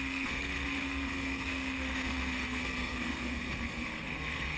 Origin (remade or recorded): remade